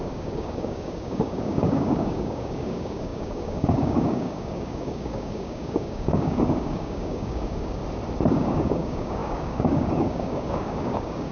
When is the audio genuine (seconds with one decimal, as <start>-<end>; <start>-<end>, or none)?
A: 7.8-8.3